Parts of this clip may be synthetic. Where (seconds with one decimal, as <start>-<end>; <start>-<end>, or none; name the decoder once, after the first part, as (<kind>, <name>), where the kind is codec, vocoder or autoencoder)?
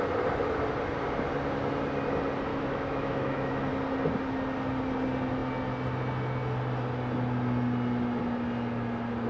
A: 2.5-3.7 (autoencoder, DAC-VAE)